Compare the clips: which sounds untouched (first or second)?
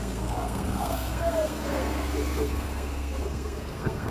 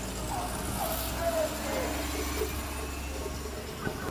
second